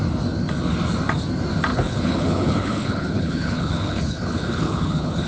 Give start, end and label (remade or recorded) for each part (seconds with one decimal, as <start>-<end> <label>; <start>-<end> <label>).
0.0-1.7 recorded; 1.7-5.3 remade